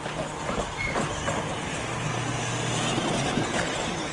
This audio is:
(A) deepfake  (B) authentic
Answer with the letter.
B